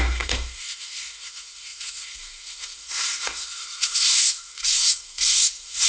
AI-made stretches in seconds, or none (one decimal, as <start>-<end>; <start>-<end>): 0.0-5.9